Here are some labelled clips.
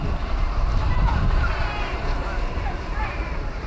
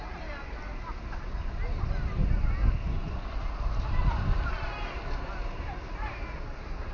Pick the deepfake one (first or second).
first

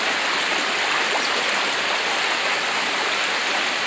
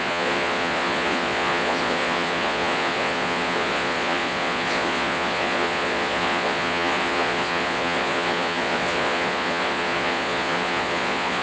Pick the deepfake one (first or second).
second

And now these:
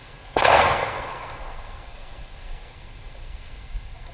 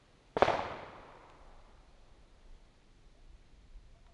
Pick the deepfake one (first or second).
first